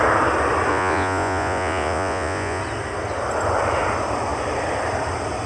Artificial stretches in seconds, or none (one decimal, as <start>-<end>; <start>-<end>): 0.7-2.6